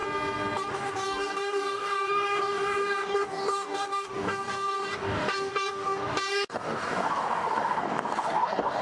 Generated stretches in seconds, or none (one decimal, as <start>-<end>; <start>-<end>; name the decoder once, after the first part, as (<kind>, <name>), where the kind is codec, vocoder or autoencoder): 0.7-8.8 (codec, DAC)